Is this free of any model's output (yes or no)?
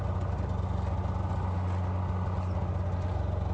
yes